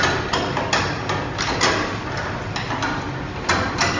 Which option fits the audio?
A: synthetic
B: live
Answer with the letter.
B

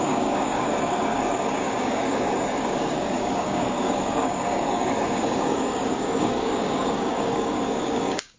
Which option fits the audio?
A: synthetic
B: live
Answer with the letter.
A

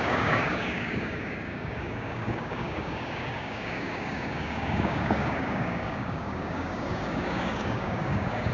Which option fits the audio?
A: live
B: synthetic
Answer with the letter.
B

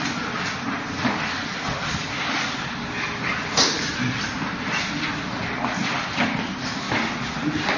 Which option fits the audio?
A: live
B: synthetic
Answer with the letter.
A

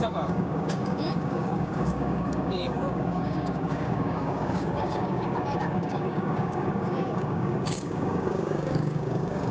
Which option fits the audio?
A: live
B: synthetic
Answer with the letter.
B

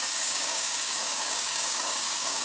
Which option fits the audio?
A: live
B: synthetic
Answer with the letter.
B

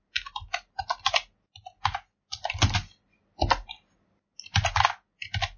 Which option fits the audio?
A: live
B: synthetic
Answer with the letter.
A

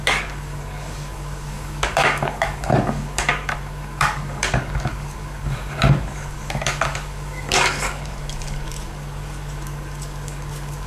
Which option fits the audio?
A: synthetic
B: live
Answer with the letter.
A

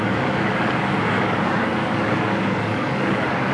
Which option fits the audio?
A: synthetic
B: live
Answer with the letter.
A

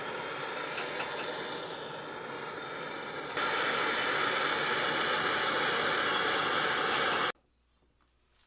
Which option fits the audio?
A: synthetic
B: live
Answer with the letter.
B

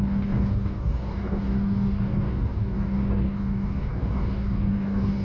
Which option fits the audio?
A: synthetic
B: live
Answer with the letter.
A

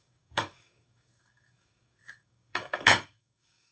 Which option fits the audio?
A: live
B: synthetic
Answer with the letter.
B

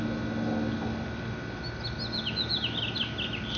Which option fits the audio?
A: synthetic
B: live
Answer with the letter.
B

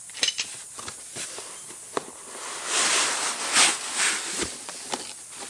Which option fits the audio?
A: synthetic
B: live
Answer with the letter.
B